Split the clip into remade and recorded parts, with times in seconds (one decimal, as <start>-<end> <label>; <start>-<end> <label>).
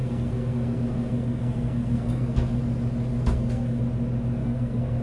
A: 0.0-2.6 remade; 2.6-3.1 recorded; 3.1-3.8 remade; 3.8-4.4 recorded; 4.4-5.0 remade